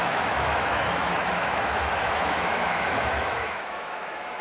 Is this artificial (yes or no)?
yes